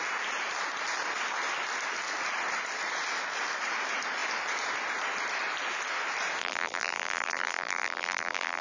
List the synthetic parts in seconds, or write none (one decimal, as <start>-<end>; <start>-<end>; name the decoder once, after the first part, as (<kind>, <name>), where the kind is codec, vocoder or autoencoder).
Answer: 6.4-8.6 (vocoder, BigVGAN v2)